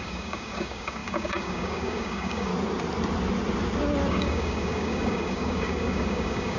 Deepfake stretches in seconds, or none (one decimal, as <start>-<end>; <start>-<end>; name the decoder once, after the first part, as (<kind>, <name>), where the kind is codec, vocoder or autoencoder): 0.0-2.5 (codec, DAC); 4.1-6.6